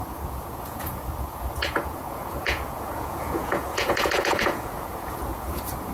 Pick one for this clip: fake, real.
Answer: fake